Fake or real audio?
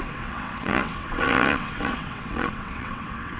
fake